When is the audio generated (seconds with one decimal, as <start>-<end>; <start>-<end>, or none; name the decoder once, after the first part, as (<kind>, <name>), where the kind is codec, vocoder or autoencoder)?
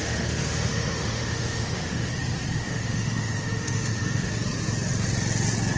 0.0-2.1 (autoencoder, DAC-VAE); 2.6-4.3